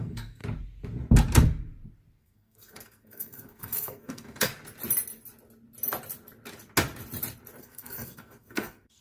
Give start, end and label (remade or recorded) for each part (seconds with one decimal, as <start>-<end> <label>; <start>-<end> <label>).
0.0-0.4 remade; 0.4-2.2 recorded; 2.2-4.5 remade; 4.5-7.6 recorded; 7.6-9.0 remade